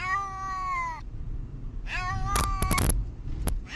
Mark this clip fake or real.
real